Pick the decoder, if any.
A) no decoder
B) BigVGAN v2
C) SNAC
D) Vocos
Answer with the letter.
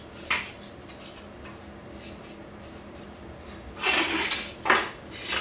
A